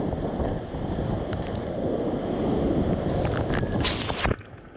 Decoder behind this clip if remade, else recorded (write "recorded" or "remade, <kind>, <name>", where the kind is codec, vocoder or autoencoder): recorded